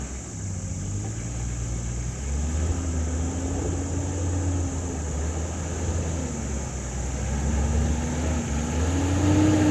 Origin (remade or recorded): recorded